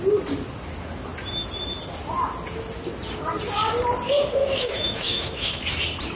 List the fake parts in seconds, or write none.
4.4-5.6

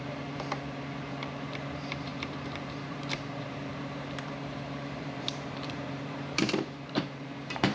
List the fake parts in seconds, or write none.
0.0-7.7

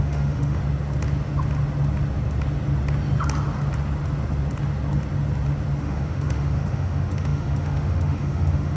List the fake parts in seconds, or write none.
0.0-0.6; 5.8-8.8

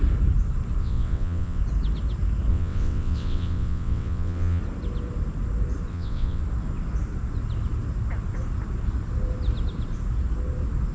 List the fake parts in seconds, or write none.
0.8-1.6; 2.5-4.6; 5.9-6.4

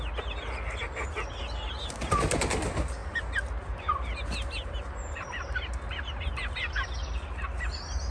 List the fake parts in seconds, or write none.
none